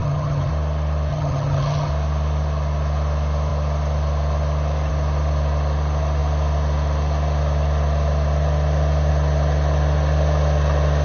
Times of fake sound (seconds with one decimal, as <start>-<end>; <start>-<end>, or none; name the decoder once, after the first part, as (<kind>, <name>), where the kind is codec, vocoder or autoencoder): 0.0-0.5 (vocoder, HiFi-GAN); 1.1-1.9